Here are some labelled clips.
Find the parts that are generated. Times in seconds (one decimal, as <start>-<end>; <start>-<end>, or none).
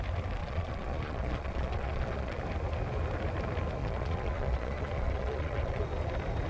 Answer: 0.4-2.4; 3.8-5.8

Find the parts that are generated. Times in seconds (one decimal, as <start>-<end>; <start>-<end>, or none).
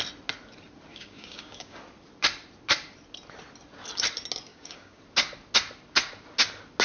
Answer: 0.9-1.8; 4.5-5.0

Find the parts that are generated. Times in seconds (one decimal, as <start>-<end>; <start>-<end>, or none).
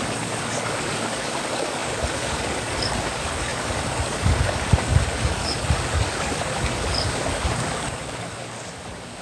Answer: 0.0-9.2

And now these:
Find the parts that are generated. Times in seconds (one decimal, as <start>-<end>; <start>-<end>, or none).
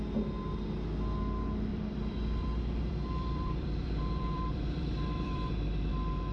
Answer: 1.7-5.5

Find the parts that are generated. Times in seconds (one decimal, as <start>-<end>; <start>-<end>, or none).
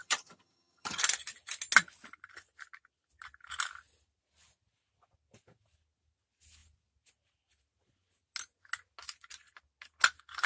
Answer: 0.0-1.0